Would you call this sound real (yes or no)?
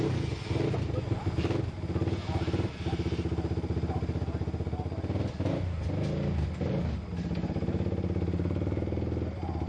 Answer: yes